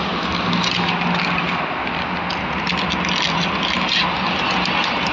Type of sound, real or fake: real